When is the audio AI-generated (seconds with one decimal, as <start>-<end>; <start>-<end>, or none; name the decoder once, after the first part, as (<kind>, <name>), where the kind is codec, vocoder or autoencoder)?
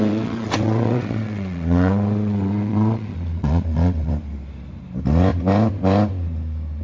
0.0-4.1 (vocoder, WaveNeXt)